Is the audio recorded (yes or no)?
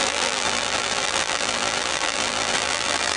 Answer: no